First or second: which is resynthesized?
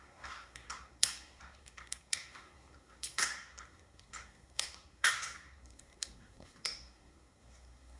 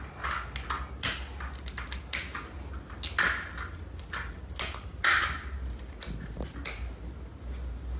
first